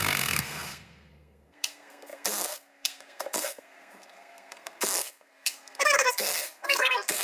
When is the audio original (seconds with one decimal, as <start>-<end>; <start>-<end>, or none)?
none